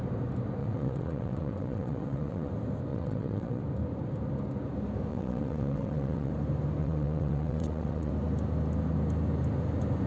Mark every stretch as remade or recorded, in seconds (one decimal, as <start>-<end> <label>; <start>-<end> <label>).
0.0-0.6 recorded; 0.6-2.5 remade; 2.5-2.9 recorded; 2.9-3.6 remade; 3.6-5.1 recorded; 5.1-6.3 remade; 6.3-6.8 recorded; 6.8-8.1 remade; 8.1-10.1 recorded